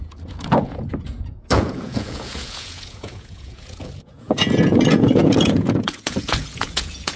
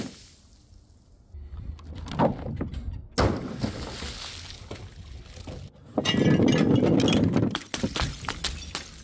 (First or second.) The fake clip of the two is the first